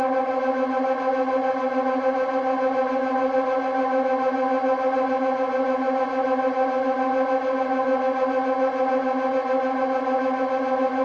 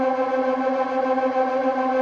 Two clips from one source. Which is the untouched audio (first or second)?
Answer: first